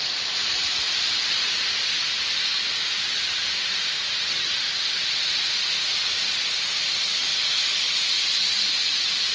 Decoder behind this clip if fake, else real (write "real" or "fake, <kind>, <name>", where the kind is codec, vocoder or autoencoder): fake, vocoder, BigVGAN v2